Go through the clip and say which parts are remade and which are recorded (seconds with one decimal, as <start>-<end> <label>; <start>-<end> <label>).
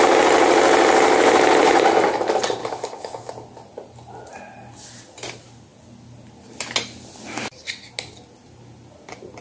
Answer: 0.0-2.6 recorded; 2.6-3.3 remade; 3.3-9.4 recorded